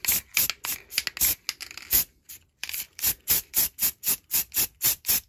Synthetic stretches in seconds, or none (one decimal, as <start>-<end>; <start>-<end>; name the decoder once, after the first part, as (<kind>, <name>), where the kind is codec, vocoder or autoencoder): 2.3-5.3 (vocoder, BigVGAN v2)